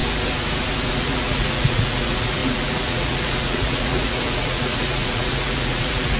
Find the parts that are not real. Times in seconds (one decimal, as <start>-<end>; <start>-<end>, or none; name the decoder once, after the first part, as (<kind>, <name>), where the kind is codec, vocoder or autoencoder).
0.9-6.2 (vocoder, Vocos)